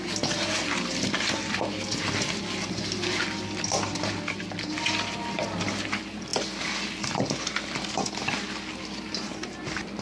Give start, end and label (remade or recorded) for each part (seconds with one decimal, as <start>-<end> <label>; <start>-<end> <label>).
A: 0.0-10.0 recorded